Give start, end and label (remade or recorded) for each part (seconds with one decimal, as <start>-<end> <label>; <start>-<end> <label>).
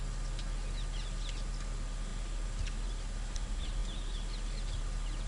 0.0-5.3 recorded